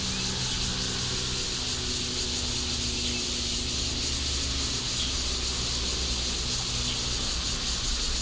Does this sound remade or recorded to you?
recorded